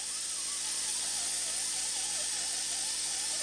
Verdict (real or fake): real